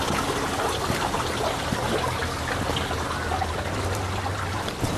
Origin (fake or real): real